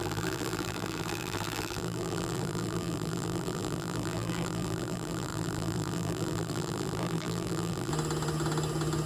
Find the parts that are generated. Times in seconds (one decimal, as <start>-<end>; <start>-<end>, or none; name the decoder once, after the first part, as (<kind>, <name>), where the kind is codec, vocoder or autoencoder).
0.0-7.9 (vocoder, BigVGAN v2)